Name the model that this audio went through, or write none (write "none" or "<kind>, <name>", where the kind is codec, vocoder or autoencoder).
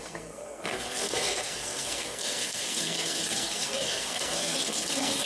codec, SNAC